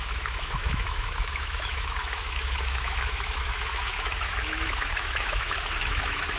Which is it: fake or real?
fake